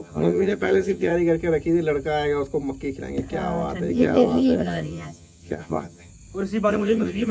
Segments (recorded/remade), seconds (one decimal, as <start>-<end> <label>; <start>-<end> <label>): 0.0-1.1 remade; 1.1-3.9 recorded; 3.9-6.1 remade; 6.1-6.7 recorded; 6.7-7.3 remade